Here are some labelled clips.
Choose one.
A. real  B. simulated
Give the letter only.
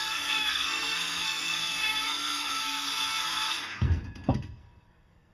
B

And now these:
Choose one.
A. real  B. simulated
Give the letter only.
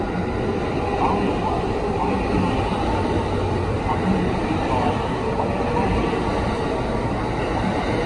A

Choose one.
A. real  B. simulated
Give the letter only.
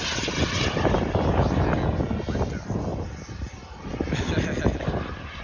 A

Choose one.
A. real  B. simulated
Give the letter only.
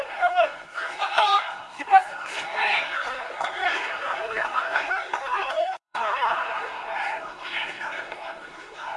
B